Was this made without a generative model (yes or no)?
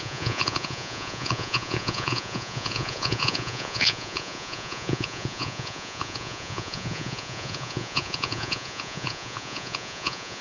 no